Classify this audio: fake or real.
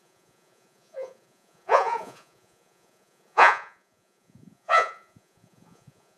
fake